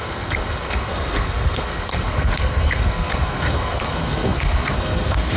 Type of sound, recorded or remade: remade